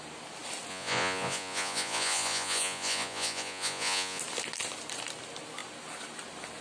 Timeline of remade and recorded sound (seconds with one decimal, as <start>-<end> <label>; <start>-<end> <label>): 0.0-0.7 recorded; 0.7-4.2 remade; 4.2-6.6 recorded